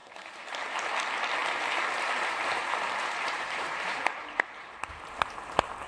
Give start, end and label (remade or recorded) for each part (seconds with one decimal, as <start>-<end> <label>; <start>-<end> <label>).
0.0-0.9 remade; 0.9-1.4 recorded; 1.4-4.9 remade; 4.9-5.9 recorded